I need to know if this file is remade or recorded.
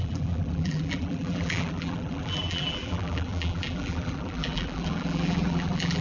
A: remade